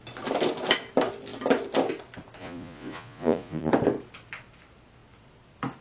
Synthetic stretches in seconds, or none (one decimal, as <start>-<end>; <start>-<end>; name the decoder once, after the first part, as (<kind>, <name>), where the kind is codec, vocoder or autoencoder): 2.4-3.7 (vocoder, Vocos)